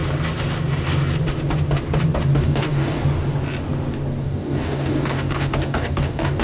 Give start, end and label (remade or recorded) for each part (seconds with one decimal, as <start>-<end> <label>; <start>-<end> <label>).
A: 0.0-2.4 recorded; 2.4-3.0 remade; 3.0-4.2 recorded; 4.2-6.4 remade